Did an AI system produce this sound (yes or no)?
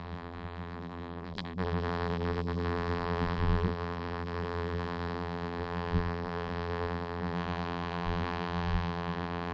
yes